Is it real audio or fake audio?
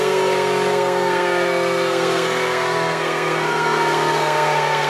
fake